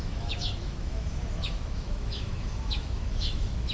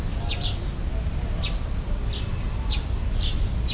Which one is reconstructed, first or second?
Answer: first